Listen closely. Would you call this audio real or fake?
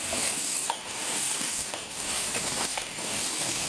fake